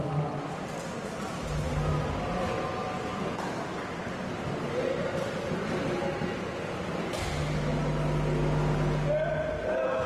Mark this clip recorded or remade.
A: recorded